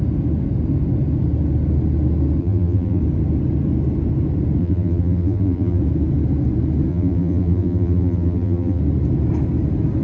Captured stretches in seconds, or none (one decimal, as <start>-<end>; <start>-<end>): 0.0-2.4; 3.0-4.6; 5.8-6.9; 8.8-10.0